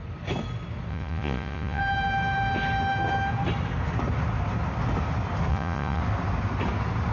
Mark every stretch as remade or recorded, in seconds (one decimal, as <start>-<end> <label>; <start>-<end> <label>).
0.0-0.9 recorded; 0.9-1.8 remade; 1.8-5.5 recorded; 5.5-6.0 remade; 6.0-7.1 recorded